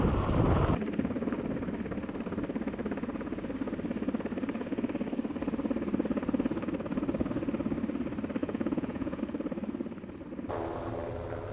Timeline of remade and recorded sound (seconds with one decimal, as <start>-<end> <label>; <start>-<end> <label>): 0.0-8.4 recorded; 8.4-9.2 remade; 9.2-11.5 recorded

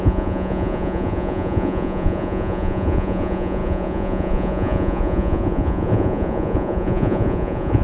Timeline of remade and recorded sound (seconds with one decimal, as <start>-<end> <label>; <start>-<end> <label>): 0.0-7.8 remade

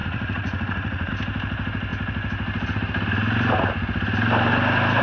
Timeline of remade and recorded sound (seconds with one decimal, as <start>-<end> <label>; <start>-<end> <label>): 0.0-1.1 remade; 1.1-5.0 recorded

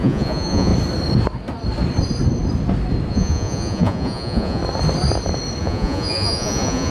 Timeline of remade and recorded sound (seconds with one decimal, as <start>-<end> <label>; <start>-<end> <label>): 0.0-0.7 remade; 0.7-3.1 recorded; 3.1-4.6 remade; 4.6-5.6 recorded; 5.6-6.9 remade

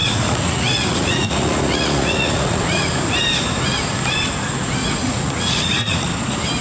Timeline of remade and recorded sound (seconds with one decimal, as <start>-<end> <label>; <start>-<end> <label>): 0.0-3.0 remade; 3.0-4.8 recorded; 4.8-6.1 remade; 6.1-6.6 recorded

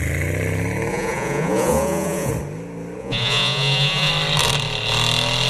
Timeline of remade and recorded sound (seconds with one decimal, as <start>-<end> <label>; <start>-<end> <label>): 0.0-0.9 recorded; 0.9-2.3 remade; 2.3-3.0 recorded; 3.0-4.1 remade; 4.1-5.5 recorded